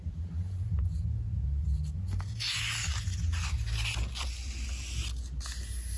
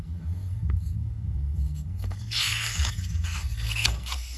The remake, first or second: second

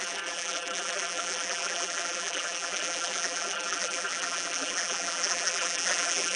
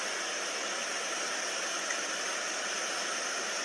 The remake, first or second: first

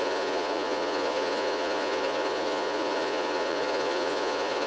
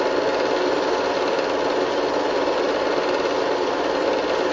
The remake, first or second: first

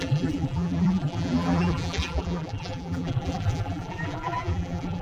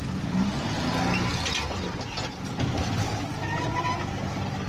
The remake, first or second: first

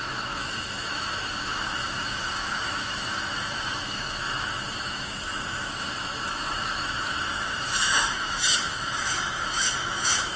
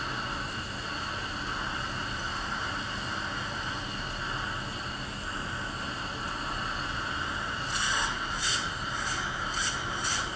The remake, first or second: first